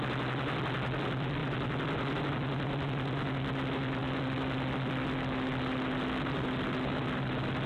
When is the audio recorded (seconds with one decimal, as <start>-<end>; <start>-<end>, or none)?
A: 0.0-7.7